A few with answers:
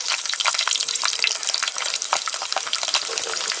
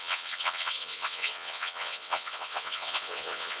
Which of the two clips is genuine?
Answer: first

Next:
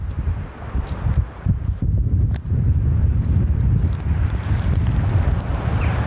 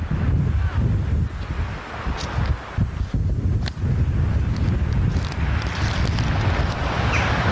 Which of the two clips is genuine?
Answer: second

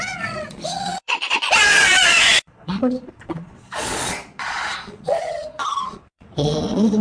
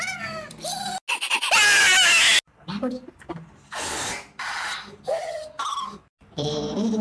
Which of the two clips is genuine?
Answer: second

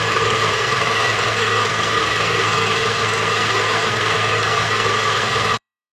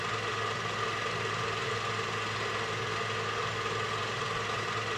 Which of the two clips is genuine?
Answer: second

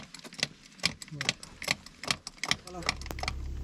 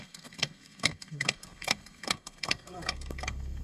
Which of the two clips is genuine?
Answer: first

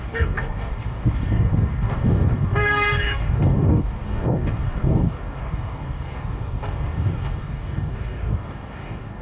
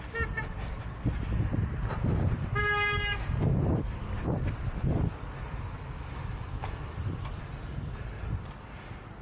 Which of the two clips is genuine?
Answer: second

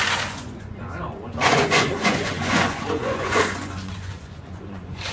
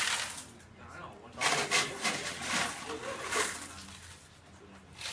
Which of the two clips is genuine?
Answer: second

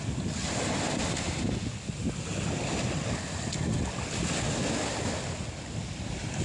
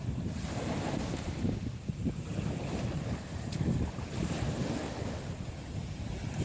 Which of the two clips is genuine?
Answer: first